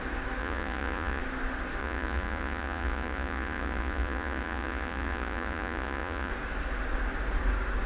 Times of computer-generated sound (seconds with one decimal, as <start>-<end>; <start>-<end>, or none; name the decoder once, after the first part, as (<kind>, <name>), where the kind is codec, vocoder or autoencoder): 0.4-1.2 (vocoder, Vocos); 1.8-6.3